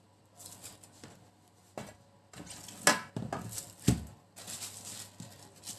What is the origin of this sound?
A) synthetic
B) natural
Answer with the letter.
B